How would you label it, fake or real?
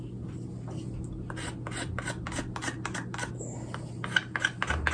real